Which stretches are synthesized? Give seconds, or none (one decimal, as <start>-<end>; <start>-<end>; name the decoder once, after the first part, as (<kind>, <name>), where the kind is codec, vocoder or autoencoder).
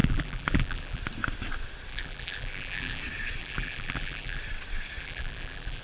0.0-1.0 (vocoder, BigVGAN v2); 1.9-3.0; 3.4-4.4; 5.0-5.8